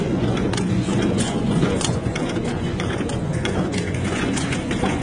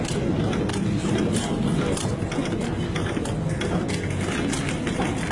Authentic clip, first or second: second